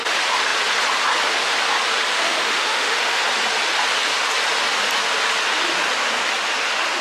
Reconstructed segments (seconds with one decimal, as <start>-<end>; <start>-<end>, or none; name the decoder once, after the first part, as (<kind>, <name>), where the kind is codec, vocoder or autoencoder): 2.1-3.2 (autoencoder, DAC-VAE)